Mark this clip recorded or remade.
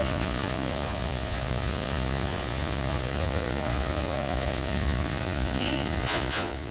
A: remade